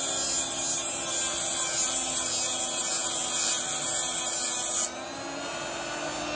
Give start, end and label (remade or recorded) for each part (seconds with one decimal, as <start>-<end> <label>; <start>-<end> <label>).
0.0-6.3 recorded